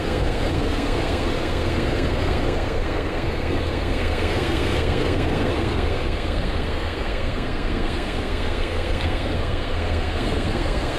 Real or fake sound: fake